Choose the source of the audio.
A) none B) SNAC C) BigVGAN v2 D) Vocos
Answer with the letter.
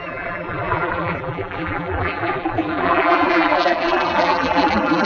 C